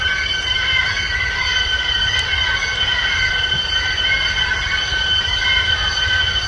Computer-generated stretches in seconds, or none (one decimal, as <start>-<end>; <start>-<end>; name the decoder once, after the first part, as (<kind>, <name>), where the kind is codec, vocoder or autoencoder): 1.5-2.0 (vocoder, BigVGAN v2)